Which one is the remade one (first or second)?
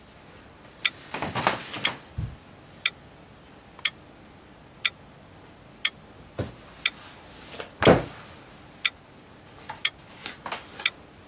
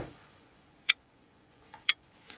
second